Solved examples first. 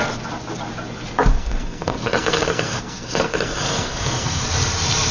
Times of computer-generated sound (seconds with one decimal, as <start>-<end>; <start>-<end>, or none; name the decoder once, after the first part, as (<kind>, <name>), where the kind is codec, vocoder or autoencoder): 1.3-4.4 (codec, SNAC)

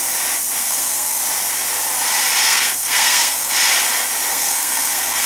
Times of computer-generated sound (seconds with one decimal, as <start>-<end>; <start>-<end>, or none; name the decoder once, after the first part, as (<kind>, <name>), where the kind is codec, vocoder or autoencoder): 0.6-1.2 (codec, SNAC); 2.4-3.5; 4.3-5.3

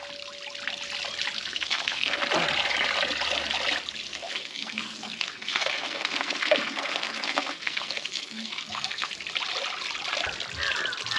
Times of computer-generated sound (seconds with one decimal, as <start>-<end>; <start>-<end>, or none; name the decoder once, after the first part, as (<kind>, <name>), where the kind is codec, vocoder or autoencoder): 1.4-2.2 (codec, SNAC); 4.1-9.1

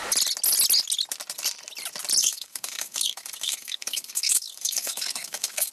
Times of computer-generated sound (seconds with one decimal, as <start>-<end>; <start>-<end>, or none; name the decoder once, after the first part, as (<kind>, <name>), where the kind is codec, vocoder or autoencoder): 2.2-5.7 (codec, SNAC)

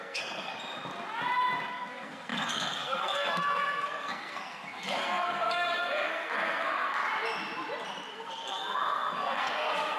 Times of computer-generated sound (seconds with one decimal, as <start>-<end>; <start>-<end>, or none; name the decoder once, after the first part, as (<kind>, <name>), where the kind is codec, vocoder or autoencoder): 0.0-0.5 (codec, SNAC); 1.7-7.0; 8.1-10.0